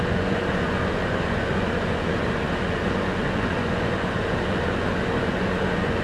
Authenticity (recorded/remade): remade